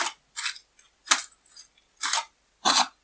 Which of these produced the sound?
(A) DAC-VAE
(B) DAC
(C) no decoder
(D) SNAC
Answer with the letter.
C